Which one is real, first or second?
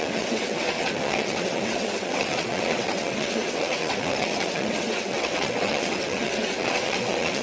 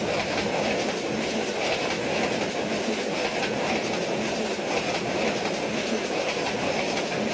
second